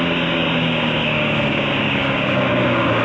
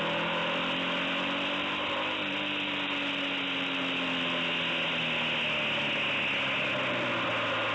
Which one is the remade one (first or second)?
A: first